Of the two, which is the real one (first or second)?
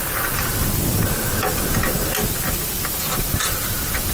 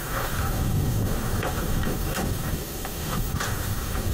first